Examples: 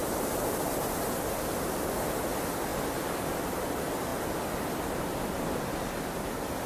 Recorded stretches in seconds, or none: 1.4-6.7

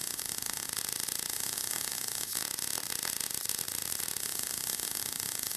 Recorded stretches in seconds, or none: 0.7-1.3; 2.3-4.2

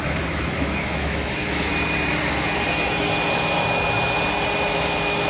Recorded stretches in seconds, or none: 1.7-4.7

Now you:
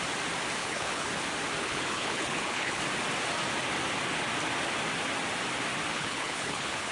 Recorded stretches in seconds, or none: 0.0-0.6; 1.1-1.6; 2.8-5.9

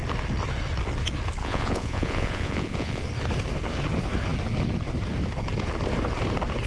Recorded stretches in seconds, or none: 0.0-1.4; 3.0-6.7

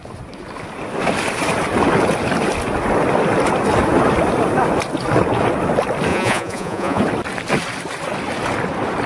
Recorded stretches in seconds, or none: 0.0-6.1; 7.0-9.1